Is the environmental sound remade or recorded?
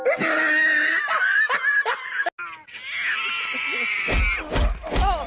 recorded